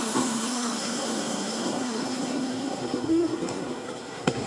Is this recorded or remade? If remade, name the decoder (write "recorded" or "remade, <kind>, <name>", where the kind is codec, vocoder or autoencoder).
remade, codec, SNAC